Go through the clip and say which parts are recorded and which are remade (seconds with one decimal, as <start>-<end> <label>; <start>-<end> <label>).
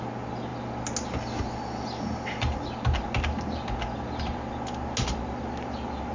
0.0-6.1 recorded